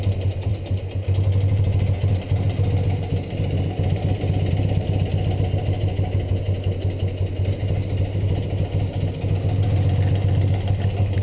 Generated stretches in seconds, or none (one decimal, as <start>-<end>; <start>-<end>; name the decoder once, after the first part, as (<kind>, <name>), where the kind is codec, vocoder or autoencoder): none